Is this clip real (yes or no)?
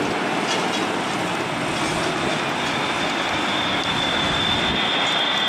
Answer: yes